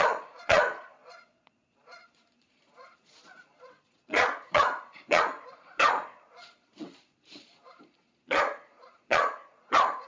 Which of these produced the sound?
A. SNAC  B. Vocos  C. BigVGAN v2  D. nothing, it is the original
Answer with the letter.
B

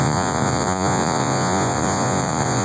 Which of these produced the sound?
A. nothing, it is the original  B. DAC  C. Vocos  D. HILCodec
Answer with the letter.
C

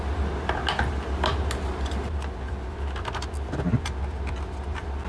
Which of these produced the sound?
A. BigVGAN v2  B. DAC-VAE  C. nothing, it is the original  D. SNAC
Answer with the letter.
C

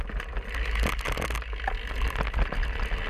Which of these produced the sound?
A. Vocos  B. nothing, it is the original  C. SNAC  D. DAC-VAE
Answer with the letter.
B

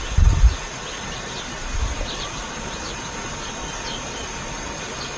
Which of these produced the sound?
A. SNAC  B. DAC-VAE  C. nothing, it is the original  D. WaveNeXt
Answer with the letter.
C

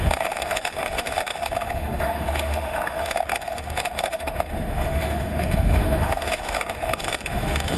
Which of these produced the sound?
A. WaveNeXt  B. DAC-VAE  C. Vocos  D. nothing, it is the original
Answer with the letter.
B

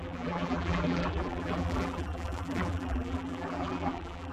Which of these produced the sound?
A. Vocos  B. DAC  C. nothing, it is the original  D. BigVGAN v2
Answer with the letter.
D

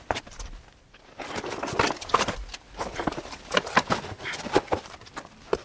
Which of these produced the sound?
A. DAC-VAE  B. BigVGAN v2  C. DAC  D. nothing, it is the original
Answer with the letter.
D